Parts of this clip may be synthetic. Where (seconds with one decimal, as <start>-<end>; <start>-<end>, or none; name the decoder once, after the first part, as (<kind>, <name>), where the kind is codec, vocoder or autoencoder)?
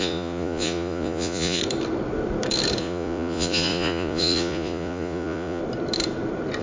0.0-1.6 (vocoder, Vocos); 2.8-5.6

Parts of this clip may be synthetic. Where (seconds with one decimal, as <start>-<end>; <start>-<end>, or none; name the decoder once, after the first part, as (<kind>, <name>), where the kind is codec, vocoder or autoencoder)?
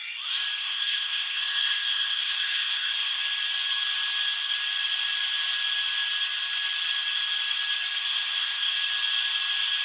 0.6-3.2 (codec, SNAC); 7.9-8.7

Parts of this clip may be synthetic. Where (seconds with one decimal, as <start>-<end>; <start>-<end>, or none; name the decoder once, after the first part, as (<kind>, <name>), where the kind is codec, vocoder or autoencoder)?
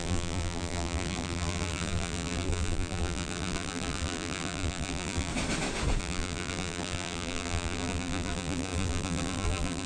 0.0-5.3 (vocoder, BigVGAN v2); 6.0-9.9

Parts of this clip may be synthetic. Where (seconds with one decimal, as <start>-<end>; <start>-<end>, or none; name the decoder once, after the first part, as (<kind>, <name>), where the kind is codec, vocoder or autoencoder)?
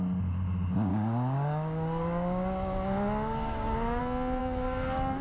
0.9-4.0 (codec, DAC); 4.4-5.2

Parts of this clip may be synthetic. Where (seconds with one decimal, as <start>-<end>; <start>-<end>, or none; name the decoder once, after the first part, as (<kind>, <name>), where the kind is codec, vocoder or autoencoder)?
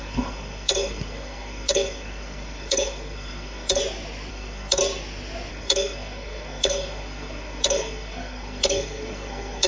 0.0-3.8 (codec, SNAC); 4.3-4.8; 5.5-9.7